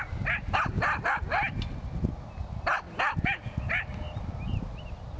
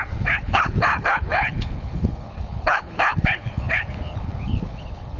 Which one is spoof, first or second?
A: second